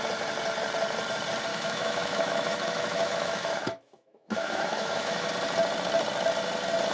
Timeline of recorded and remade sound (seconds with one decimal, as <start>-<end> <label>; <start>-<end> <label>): 0.0-1.5 recorded; 1.5-5.3 remade; 5.3-6.9 recorded